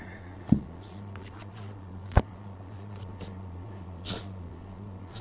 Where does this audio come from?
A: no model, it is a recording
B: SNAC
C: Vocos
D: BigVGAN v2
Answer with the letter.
C